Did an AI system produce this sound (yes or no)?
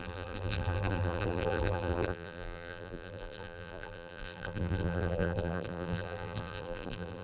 yes